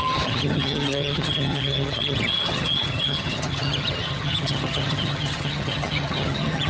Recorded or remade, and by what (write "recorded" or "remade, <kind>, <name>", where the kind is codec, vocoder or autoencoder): remade, vocoder, HiFi-GAN